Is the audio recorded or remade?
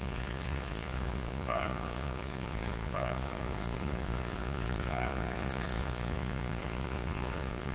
remade